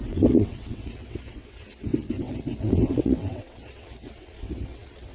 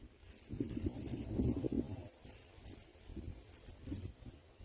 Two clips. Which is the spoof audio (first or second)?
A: first